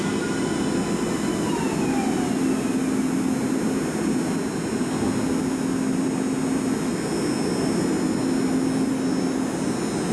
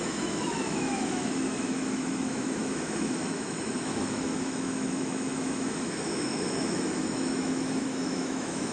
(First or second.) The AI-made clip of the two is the second